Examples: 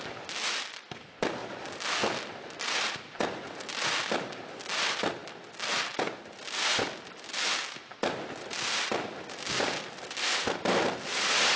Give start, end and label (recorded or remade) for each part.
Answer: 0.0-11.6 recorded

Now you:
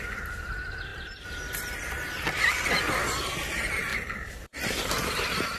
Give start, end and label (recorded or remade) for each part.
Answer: 0.0-0.9 recorded; 0.9-1.6 remade; 1.6-3.9 recorded; 3.9-4.8 remade; 4.8-5.6 recorded

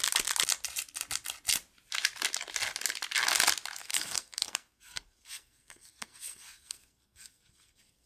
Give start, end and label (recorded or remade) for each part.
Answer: 0.0-3.8 recorded; 3.8-8.1 remade

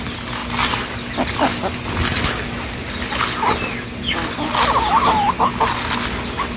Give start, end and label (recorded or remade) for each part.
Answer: 0.0-6.6 recorded

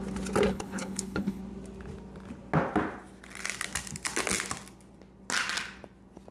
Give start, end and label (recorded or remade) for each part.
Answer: 0.0-0.5 recorded; 0.5-1.4 remade; 1.4-6.3 recorded

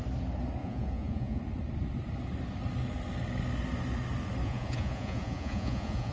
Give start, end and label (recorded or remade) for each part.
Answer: 0.0-0.6 recorded; 0.6-1.4 remade; 1.4-4.4 recorded; 4.4-6.1 remade